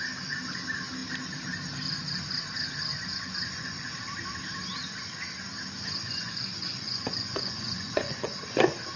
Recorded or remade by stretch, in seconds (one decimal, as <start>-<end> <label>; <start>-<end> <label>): 0.0-2.9 recorded; 2.9-3.9 remade; 3.9-5.9 recorded; 5.9-8.6 remade; 8.6-9.0 recorded